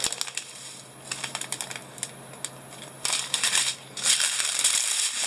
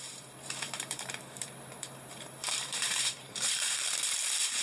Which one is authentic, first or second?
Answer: first